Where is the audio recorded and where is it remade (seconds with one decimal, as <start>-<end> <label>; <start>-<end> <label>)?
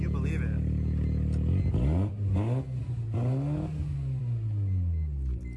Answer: 0.0-5.6 recorded